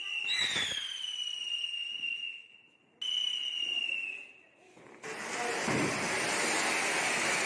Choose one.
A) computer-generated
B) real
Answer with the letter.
B